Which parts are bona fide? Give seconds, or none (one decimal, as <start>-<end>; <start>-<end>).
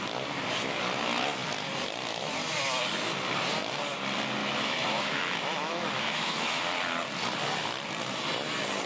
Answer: 0.0-4.4; 6.6-8.9